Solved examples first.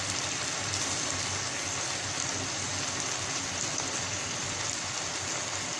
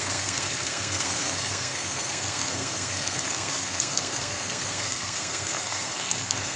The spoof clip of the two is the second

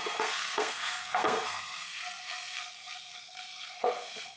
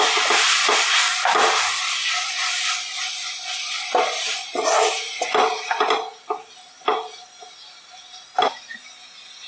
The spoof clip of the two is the first